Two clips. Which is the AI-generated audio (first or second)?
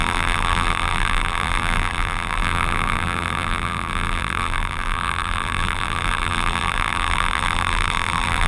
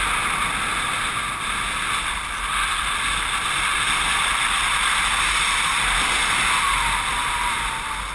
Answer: first